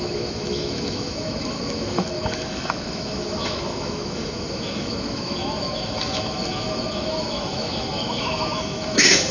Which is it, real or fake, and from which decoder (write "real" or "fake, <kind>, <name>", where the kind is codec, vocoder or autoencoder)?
fake, autoencoder, DAC-VAE